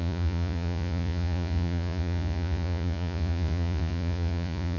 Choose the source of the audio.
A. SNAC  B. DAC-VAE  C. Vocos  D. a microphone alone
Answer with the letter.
C